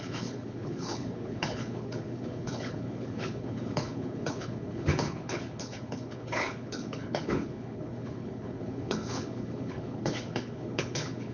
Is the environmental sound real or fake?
fake